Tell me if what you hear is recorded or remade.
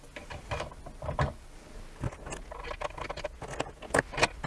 recorded